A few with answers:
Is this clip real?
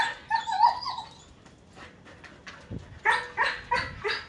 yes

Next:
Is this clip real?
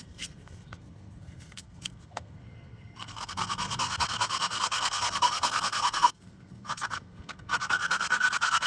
no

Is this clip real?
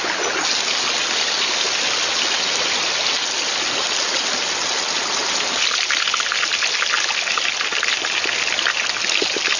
yes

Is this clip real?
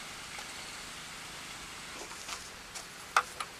yes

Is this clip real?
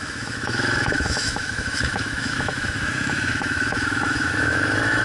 no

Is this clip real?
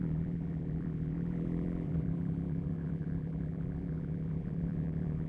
no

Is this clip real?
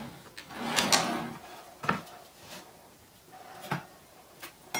yes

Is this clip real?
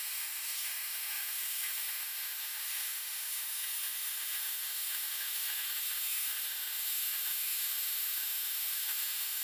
no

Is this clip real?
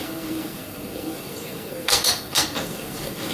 no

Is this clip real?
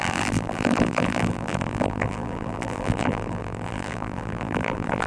no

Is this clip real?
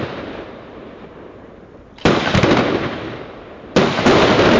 yes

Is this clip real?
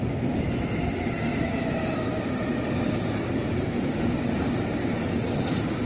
yes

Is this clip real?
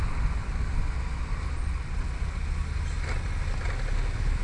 yes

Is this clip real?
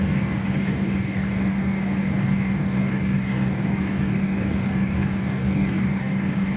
no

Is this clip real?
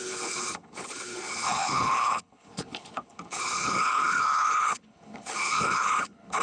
no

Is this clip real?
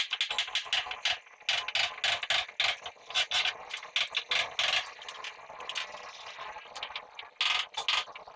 yes